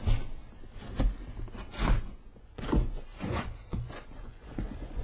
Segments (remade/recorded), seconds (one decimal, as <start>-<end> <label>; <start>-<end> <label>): 0.0-2.3 recorded; 2.3-5.0 remade